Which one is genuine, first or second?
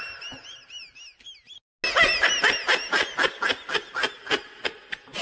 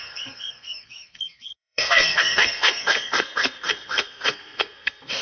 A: first